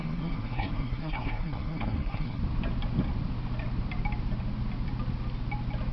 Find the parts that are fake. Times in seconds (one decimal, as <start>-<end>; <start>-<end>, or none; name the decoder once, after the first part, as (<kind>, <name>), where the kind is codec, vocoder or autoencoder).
0.0-2.4 (codec, SNAC)

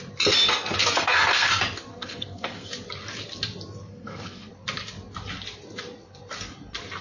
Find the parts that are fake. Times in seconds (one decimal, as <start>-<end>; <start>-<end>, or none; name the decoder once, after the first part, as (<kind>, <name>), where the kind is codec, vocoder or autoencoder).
0.8-1.5 (codec, SNAC); 1.9-2.7; 3.9-4.5

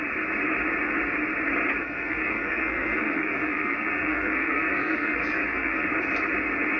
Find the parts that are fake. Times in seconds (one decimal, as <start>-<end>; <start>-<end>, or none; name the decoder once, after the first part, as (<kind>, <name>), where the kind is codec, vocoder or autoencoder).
1.8-5.9 (codec, SNAC)

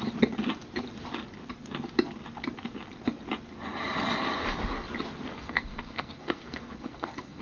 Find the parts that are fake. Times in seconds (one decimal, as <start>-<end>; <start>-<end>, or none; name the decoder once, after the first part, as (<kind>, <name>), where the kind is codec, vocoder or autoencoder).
5.3-7.4 (codec, SNAC)